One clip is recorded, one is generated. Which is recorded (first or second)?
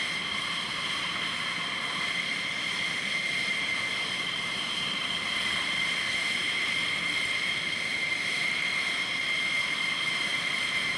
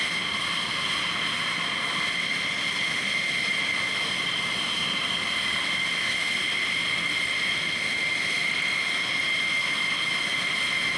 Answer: second